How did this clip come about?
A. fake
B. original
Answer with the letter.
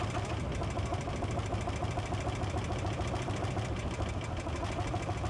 B